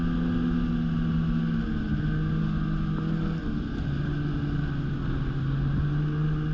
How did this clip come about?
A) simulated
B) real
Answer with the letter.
B